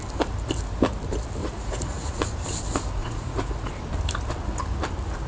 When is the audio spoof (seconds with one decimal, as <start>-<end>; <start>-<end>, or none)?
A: 1.4-2.2; 3.0-3.7